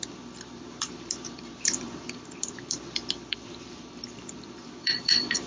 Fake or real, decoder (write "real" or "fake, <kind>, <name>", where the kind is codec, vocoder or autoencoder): fake, vocoder, BigVGAN v2